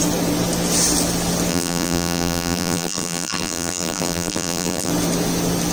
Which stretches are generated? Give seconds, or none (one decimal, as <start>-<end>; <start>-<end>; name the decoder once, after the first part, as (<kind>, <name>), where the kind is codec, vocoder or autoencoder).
1.5-4.9 (vocoder, BigVGAN v2)